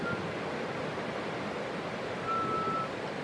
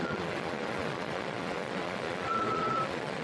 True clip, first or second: first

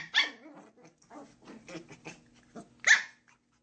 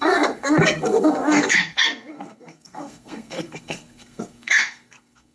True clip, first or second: first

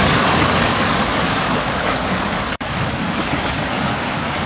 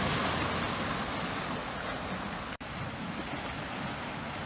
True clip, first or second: second